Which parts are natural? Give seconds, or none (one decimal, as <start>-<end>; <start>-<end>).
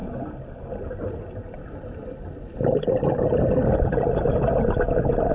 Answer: 0.0-5.3